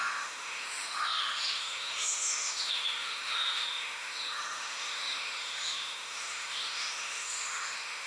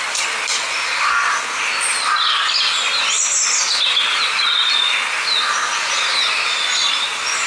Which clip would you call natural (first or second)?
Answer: second